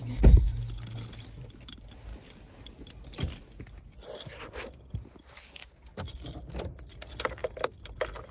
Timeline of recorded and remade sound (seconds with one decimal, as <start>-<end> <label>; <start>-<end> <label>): 0.0-2.1 recorded; 2.1-2.7 remade; 2.7-8.3 recorded